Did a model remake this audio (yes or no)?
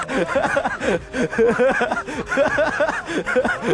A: no